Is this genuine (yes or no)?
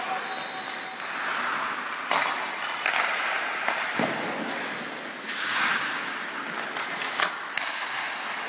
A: yes